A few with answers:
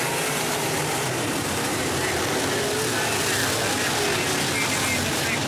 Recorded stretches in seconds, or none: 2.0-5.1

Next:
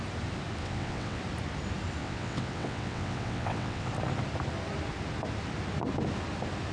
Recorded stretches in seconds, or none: 0.0-0.6; 1.2-2.0; 3.9-6.7

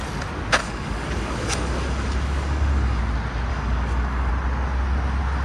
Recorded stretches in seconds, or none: 0.0-0.6; 3.0-3.5; 4.3-5.4

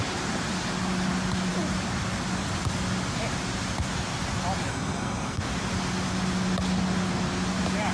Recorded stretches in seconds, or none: 0.0-4.7; 5.4-7.9